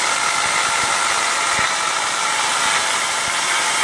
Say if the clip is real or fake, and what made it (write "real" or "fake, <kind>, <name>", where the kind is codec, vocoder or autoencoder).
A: real